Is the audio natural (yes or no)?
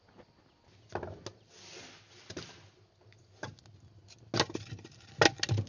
yes